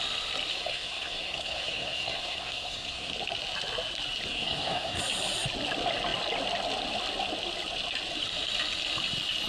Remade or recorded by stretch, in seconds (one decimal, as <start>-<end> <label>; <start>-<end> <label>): 0.0-0.5 recorded; 0.5-3.1 remade; 3.1-4.3 recorded; 4.3-5.0 remade; 5.0-9.5 recorded